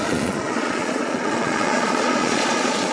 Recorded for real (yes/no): no